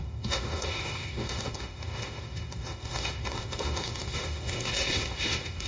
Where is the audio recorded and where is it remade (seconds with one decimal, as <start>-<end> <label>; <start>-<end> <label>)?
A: 0.0-5.7 remade